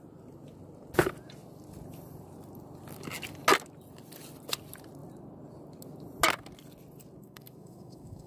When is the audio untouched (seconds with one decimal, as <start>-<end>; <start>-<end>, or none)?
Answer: 0.0-7.2